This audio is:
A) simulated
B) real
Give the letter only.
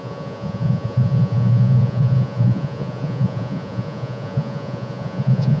A